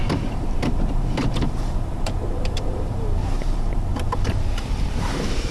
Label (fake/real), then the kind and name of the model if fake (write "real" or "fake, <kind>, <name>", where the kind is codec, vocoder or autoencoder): fake, vocoder, BigVGAN v2